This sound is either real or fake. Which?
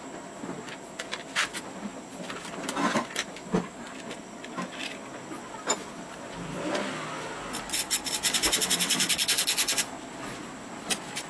real